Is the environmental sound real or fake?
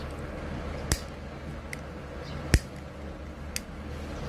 real